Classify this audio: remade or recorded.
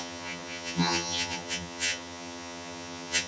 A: remade